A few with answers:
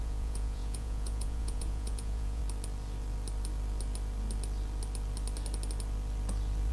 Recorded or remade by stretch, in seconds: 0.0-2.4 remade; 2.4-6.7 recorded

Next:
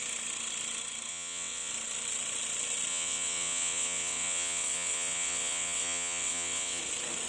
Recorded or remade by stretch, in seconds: 0.0-1.1 recorded; 1.1-1.7 remade; 1.7-2.9 recorded; 2.9-6.8 remade; 6.8-7.3 recorded

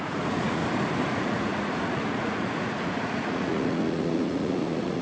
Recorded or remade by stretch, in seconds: 0.0-0.6 remade; 0.6-1.1 recorded; 1.1-5.0 remade

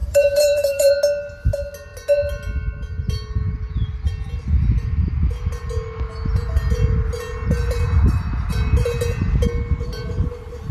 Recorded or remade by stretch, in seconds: 0.0-0.9 remade; 0.9-10.7 recorded